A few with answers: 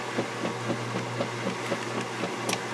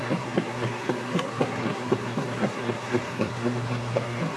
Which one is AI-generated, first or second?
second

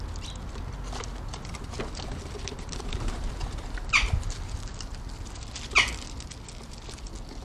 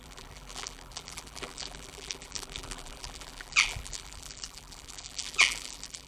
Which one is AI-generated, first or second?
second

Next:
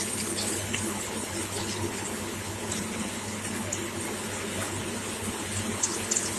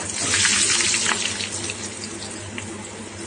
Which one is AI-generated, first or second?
first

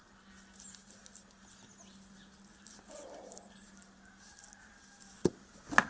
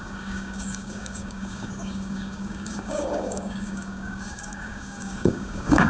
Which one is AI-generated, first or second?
second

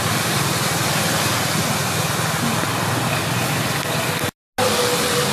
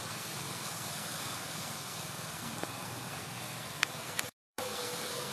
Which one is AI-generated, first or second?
second